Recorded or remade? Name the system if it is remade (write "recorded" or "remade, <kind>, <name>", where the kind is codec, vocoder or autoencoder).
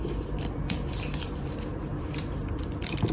remade, vocoder, BigVGAN v2